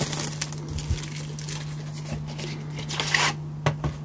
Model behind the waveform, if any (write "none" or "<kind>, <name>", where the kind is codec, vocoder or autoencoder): none